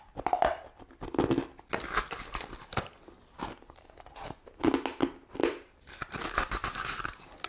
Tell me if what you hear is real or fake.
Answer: real